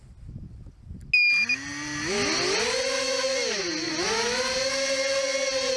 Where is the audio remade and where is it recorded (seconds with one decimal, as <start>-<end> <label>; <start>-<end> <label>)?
0.0-5.8 recorded